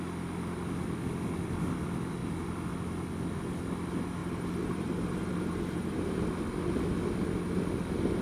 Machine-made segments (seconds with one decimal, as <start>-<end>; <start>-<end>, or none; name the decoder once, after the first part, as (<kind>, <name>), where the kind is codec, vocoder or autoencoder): 4.2-6.0 (vocoder, BigVGAN v2)